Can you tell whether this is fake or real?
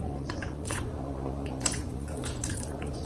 fake